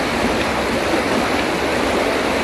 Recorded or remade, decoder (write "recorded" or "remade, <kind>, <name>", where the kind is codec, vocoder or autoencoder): recorded